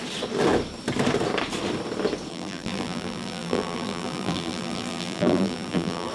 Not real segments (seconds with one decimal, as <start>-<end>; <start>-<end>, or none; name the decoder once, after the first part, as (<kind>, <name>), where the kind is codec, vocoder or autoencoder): 2.3-6.1 (vocoder, BigVGAN v2)